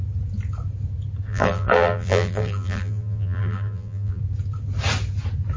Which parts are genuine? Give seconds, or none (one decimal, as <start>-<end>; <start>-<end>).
0.0-1.3; 4.2-5.6